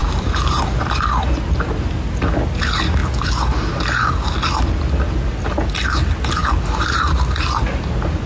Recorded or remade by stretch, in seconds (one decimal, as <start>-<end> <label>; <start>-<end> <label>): 0.0-1.0 remade; 1.0-6.4 recorded; 6.4-7.0 remade; 7.0-8.3 recorded